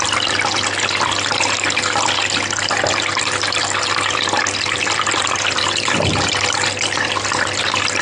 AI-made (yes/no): no